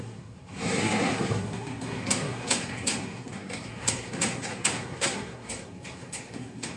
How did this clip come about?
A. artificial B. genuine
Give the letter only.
A